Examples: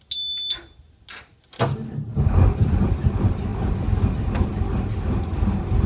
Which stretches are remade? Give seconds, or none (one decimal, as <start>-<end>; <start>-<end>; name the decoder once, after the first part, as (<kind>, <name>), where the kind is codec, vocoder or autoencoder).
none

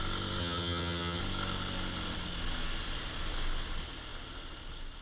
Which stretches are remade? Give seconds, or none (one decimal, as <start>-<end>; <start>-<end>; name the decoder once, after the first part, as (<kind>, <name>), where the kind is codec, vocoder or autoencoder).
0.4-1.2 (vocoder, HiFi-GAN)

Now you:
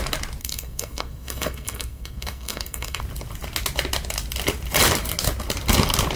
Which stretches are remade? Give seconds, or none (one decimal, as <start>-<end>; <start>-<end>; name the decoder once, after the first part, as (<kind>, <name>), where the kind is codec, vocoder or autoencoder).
0.4-3.0 (codec, SNAC)

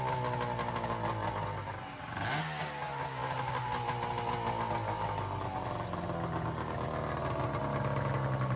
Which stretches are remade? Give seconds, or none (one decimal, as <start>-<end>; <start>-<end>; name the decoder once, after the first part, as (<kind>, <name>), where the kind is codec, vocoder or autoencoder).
none

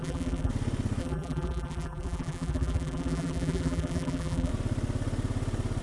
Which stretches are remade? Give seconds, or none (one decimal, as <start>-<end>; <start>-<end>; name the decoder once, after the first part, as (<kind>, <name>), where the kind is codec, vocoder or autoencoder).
0.0-0.5 (vocoder, BigVGAN v2); 1.0-4.5

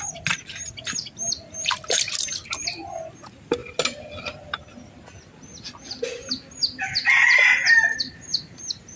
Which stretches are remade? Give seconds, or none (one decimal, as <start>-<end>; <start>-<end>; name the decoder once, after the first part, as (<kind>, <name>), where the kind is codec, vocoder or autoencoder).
none

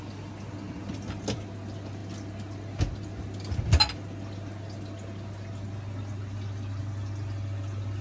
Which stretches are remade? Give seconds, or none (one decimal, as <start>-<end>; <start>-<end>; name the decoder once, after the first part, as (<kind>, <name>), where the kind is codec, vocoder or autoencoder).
none